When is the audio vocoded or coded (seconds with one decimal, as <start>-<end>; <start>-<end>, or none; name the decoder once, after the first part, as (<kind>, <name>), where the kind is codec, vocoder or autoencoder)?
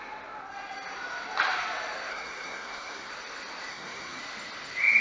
2.1-3.1 (codec, SNAC); 3.7-4.2